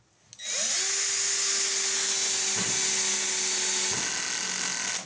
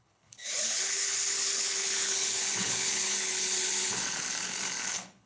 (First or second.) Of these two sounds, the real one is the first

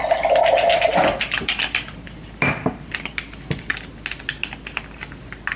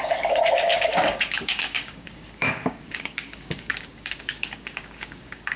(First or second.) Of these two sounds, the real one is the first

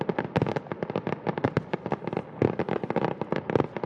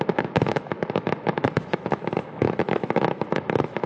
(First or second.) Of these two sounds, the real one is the first